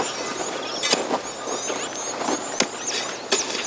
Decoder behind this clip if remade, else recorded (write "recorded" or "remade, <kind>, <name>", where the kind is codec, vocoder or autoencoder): recorded